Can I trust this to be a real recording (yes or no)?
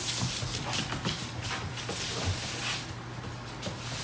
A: yes